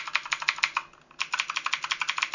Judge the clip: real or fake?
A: real